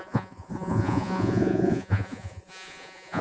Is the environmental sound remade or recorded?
remade